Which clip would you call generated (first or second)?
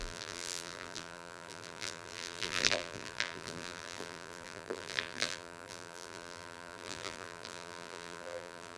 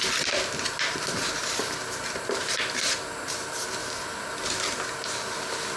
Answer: first